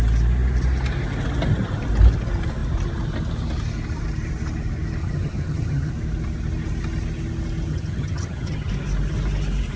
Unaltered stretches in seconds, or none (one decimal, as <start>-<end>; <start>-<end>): 0.0-5.0; 5.9-7.7; 8.7-9.8